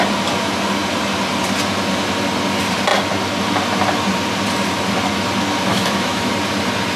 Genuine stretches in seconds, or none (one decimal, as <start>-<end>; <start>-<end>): 0.0-5.7; 6.3-7.0